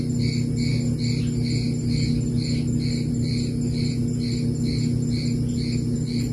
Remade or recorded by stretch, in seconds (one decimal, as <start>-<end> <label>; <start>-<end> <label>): 0.0-6.3 recorded